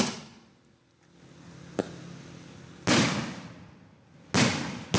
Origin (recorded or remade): recorded